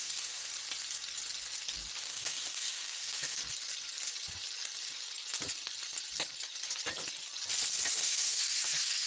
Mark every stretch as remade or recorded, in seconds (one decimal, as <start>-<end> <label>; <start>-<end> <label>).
0.0-0.5 remade; 0.5-2.0 recorded; 2.0-3.4 remade; 3.4-7.9 recorded; 7.9-9.1 remade